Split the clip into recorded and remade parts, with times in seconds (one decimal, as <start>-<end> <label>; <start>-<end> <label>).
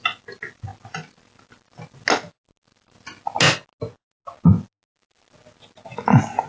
0.0-6.5 recorded